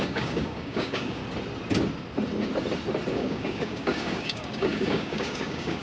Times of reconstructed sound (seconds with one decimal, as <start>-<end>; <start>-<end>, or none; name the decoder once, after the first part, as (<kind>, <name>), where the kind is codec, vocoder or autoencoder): 0.0-1.2 (codec, DAC); 3.1-5.8